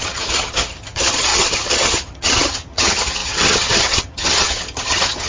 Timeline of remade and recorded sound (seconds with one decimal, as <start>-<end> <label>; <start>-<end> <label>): 0.0-5.3 remade